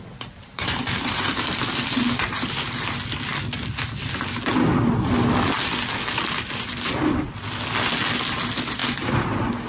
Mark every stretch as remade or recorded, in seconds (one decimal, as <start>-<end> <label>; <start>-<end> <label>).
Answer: 0.0-0.5 recorded; 0.5-1.7 remade; 1.7-9.7 recorded